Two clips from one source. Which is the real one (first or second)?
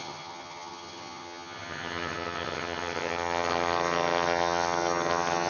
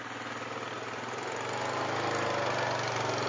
second